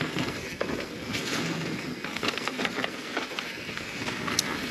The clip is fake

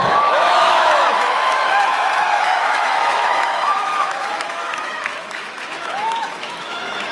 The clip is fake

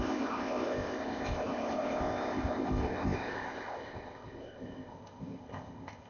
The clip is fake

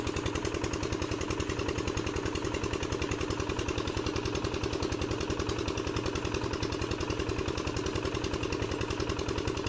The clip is real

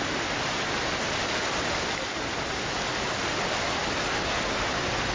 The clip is real